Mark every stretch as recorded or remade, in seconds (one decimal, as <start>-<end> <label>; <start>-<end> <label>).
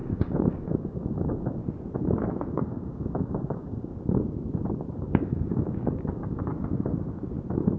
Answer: 0.0-1.6 remade; 1.6-2.5 recorded; 2.5-3.9 remade; 3.9-5.0 recorded; 5.0-6.5 remade; 6.5-7.8 recorded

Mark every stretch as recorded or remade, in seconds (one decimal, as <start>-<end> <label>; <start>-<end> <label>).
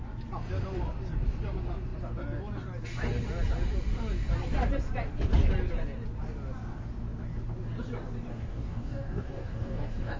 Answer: 0.0-8.3 recorded; 8.3-10.2 remade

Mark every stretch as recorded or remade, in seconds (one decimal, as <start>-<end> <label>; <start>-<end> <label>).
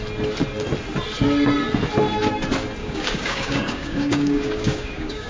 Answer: 0.0-2.8 recorded; 2.8-5.3 remade